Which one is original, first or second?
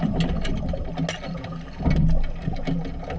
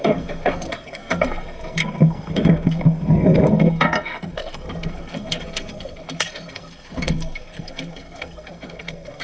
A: first